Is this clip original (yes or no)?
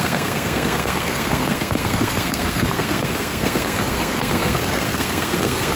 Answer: no